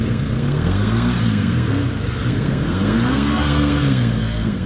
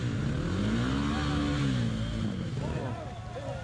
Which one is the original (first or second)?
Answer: second